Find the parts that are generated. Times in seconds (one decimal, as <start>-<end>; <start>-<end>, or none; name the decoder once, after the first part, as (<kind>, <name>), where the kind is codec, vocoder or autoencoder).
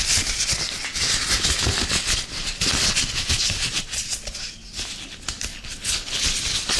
5.5-6.2 (codec, HILCodec)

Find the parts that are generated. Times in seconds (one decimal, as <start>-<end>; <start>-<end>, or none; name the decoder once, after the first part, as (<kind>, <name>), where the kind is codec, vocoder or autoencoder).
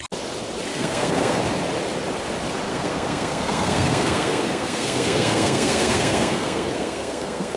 0.7-1.4 (codec, SNAC); 2.7-7.6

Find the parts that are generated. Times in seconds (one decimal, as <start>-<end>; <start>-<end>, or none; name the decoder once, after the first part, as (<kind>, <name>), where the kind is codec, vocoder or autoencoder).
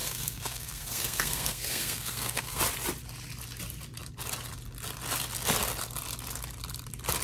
0.0-2.6 (codec, SNAC)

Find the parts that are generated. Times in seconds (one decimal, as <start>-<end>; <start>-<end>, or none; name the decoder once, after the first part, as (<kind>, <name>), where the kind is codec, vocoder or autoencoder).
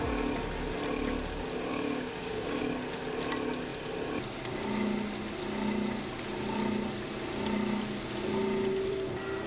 1.7-2.6 (codec, DAC)